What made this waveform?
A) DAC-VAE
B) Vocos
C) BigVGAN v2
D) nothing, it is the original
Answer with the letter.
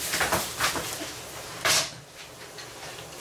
D